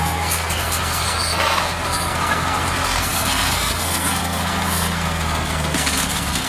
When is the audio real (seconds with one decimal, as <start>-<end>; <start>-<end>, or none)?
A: none